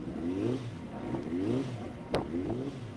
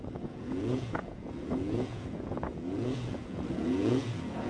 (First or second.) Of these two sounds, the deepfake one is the second